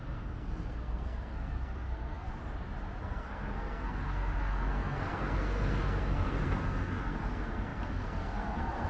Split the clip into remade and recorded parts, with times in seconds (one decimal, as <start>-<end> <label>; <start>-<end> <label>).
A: 0.0-2.3 remade; 2.3-3.0 recorded; 3.0-8.9 remade